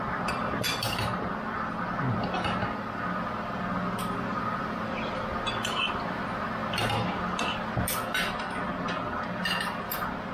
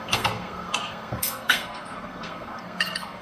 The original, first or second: first